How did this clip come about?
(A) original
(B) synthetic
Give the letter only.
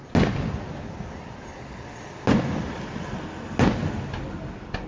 A